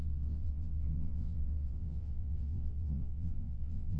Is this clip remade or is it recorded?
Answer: remade